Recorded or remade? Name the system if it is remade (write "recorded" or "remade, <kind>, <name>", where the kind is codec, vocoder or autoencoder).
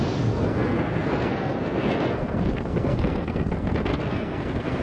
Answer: remade, codec, SNAC